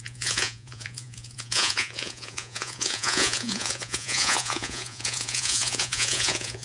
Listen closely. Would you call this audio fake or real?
fake